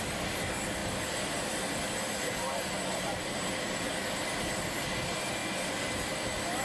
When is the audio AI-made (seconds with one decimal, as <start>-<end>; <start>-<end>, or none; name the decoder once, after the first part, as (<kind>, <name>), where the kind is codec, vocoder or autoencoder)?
none